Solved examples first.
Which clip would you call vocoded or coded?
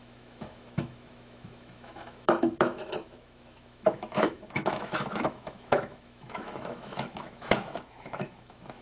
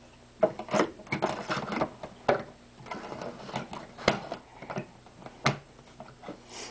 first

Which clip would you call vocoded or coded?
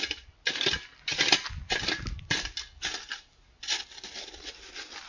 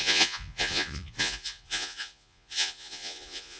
second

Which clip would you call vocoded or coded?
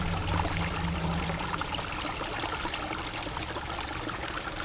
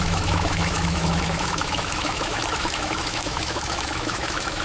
second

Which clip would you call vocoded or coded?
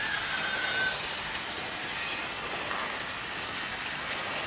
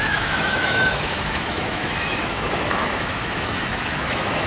second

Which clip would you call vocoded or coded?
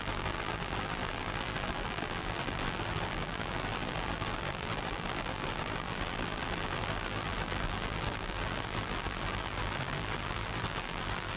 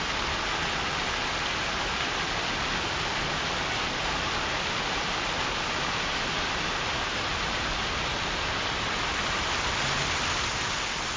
first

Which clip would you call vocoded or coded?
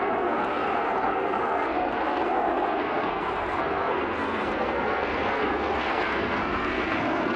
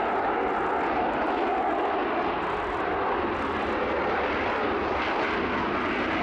first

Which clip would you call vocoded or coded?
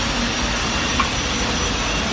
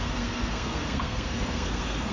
second